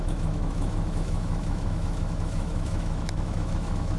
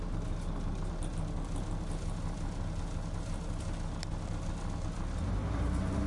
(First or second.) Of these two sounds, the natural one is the second